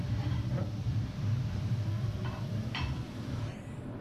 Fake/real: fake